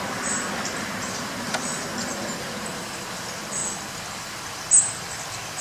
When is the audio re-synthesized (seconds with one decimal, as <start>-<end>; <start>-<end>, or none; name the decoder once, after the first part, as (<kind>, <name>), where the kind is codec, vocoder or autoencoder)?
none